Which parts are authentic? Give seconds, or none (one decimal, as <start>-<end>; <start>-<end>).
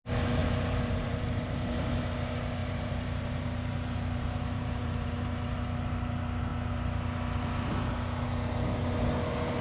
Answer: 0.0-0.4; 1.9-2.6; 5.1-9.6